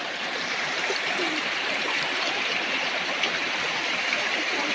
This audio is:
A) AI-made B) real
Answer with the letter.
A